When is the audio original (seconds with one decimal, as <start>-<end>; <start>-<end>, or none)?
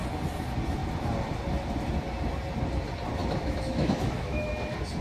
0.0-3.2; 4.5-5.0